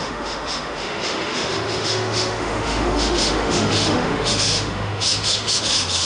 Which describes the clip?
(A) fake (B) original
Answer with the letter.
A